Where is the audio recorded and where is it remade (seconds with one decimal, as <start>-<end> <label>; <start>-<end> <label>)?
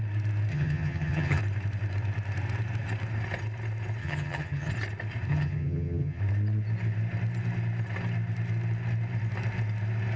0.0-0.5 recorded; 0.5-1.4 remade; 1.4-4.0 recorded; 4.0-4.7 remade; 4.7-5.3 recorded; 5.3-6.2 remade; 6.2-10.2 recorded